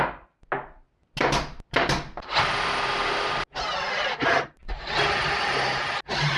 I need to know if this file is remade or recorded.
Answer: recorded